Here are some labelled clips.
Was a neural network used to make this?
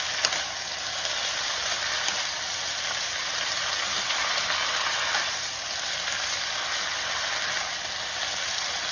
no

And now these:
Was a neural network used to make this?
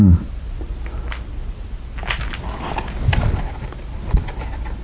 no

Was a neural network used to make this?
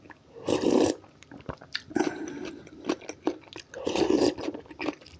no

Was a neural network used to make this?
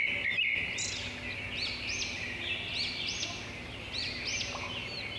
no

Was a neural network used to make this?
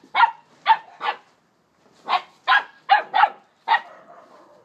no